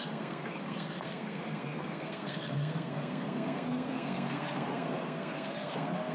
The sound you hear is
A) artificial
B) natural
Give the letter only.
A